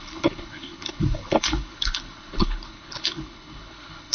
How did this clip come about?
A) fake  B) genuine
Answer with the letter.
A